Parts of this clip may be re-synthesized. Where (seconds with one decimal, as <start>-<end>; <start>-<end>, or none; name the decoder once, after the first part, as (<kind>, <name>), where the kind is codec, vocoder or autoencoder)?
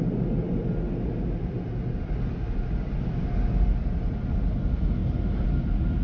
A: none